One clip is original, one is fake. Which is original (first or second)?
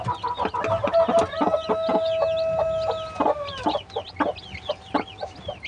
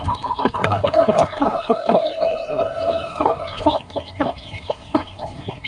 first